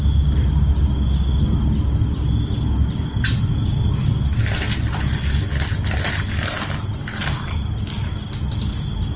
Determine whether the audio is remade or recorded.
recorded